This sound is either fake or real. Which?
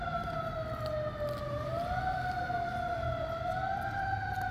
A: real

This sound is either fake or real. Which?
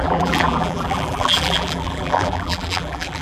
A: fake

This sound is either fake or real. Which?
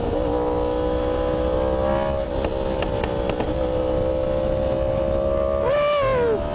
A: real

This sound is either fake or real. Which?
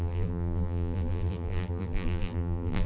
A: fake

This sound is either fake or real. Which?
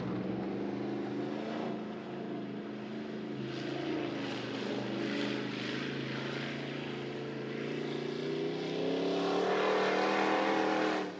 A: real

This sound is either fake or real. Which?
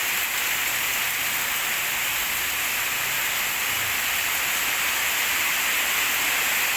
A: real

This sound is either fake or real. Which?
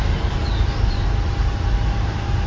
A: real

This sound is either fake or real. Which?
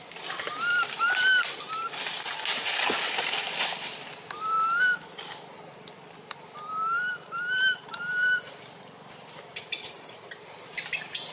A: real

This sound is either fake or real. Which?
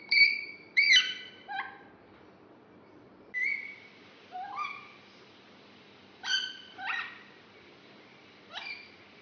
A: fake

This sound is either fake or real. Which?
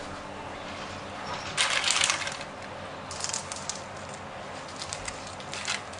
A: real